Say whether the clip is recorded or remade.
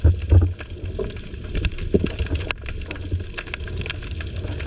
recorded